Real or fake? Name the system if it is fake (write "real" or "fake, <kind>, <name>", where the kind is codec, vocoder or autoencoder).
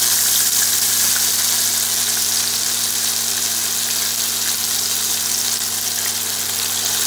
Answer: real